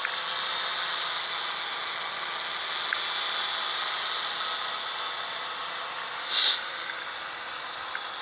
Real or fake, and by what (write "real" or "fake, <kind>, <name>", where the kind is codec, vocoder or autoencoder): real